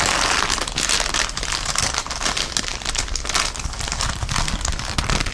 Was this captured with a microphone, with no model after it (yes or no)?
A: yes